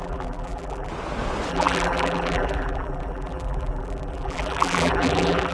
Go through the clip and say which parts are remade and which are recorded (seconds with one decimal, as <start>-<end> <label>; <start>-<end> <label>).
0.0-0.9 remade; 0.9-1.5 recorded; 1.5-5.5 remade